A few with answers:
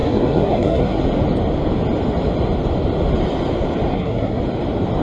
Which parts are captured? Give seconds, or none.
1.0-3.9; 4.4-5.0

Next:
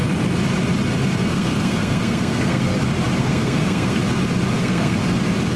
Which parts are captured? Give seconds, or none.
0.0-1.3; 2.7-3.2; 4.0-4.6; 5.0-5.6

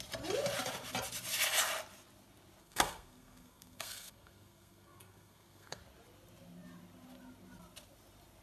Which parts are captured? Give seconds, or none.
0.0-2.6; 5.8-8.4

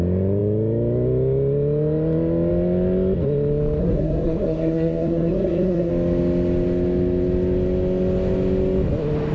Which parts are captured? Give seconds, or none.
0.0-3.8; 5.9-9.3

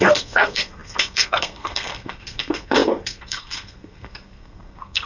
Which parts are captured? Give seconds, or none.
none

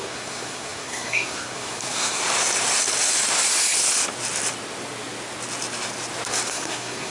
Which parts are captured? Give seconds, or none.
2.2-6.5

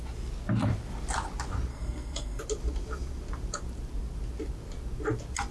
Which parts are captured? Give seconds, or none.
0.0-1.7; 2.4-5.5

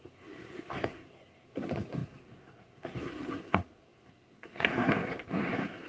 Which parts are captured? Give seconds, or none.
none